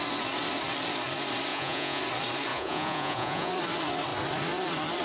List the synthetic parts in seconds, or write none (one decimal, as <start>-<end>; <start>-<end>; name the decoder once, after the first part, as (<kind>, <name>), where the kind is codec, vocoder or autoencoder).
1.5-2.0 (vocoder, Vocos); 2.5-3.5